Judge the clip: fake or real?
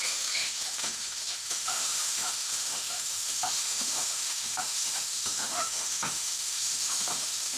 fake